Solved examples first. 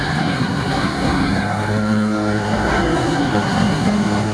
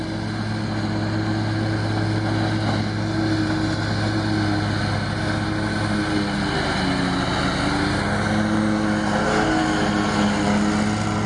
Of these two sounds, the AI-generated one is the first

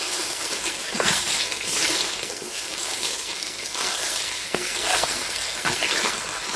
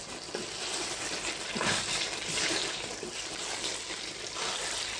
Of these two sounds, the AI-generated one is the first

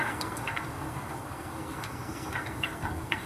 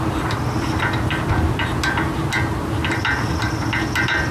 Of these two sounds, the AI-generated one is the first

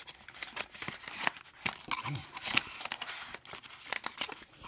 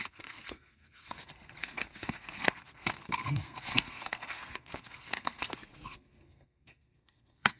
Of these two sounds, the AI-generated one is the second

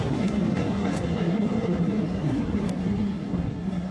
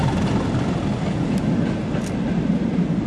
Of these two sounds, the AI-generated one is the first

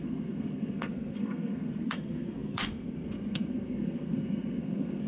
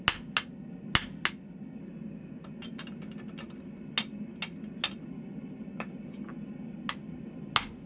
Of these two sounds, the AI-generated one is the first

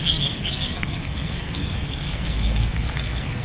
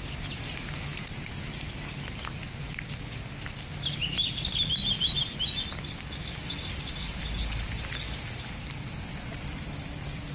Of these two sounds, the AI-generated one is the first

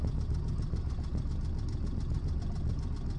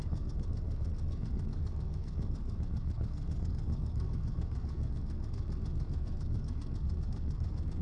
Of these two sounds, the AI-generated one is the second